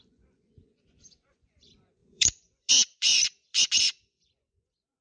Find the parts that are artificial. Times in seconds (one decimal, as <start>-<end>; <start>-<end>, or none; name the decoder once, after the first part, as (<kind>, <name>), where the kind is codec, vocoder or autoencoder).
0.0-5.0 (vocoder, Vocos)